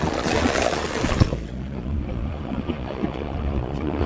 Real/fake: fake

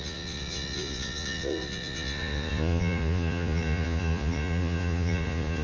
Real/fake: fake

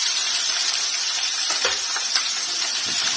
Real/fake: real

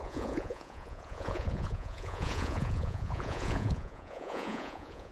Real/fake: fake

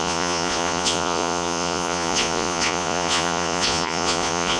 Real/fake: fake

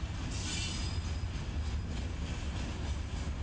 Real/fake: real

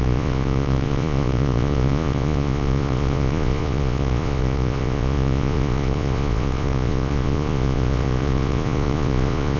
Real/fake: fake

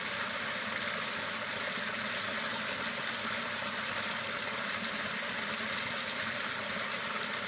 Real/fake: real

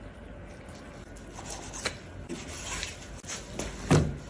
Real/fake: real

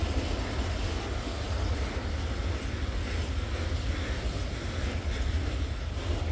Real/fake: real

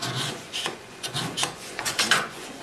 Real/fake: fake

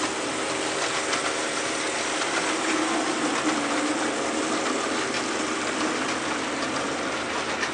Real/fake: real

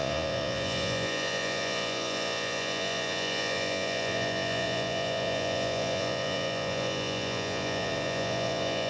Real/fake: fake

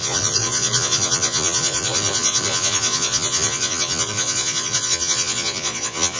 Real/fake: fake